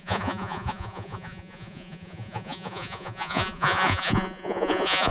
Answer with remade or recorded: remade